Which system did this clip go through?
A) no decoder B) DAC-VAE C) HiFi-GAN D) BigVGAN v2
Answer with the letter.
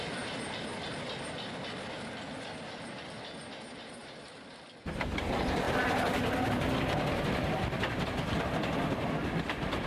A